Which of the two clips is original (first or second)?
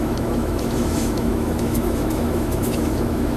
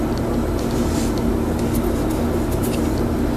second